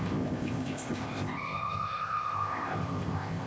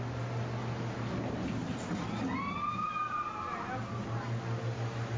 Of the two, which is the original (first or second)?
second